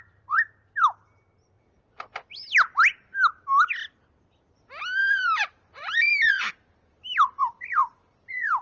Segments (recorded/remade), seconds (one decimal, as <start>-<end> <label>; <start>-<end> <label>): 0.0-5.0 recorded; 5.0-6.3 remade; 6.3-7.8 recorded; 7.8-8.6 remade